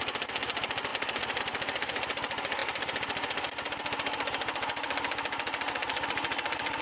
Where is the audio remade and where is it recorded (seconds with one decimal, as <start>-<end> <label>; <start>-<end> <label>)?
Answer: 0.0-6.8 recorded

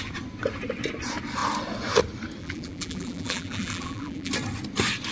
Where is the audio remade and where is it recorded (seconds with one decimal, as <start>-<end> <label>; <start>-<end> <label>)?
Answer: 0.0-2.4 recorded; 2.4-4.3 remade; 4.3-5.1 recorded

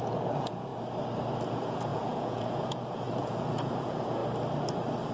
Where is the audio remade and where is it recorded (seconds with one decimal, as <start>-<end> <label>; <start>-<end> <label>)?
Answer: 0.0-0.7 remade; 0.7-1.4 recorded; 1.4-4.2 remade; 4.2-5.1 recorded

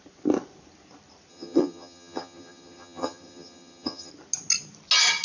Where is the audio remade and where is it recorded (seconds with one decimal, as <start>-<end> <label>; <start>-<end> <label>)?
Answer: 0.0-1.3 recorded; 1.3-4.1 remade; 4.1-5.2 recorded

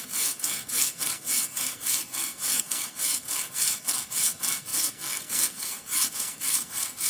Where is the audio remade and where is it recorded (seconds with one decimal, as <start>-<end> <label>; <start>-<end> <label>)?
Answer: 0.0-7.1 remade